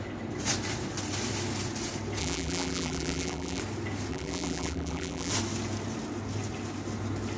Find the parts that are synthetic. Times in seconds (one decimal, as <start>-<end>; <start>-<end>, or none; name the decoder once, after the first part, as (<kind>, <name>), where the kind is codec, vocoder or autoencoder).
2.2-3.6 (vocoder, BigVGAN v2); 4.1-5.3